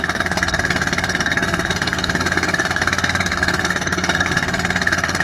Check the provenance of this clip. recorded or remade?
remade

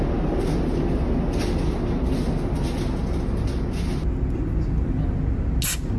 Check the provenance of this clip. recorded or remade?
recorded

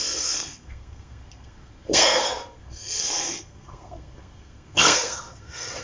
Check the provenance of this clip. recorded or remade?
remade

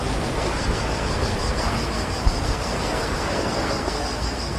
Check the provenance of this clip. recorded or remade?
remade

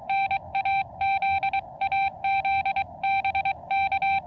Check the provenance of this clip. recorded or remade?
recorded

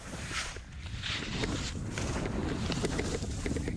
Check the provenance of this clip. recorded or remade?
recorded